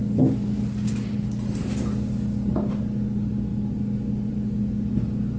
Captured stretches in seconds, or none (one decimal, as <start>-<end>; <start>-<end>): 0.0-5.4